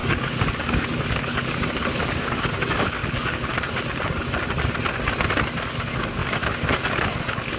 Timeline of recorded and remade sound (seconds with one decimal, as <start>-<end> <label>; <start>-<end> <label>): 0.0-3.5 remade; 3.5-5.7 recorded; 5.7-6.2 remade; 6.2-6.8 recorded; 6.8-7.6 remade